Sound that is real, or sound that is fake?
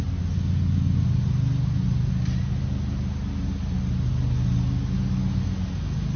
real